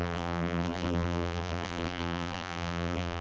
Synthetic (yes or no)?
yes